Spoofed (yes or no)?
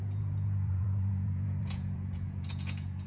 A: yes